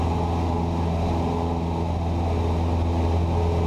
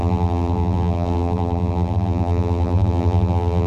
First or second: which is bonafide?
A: first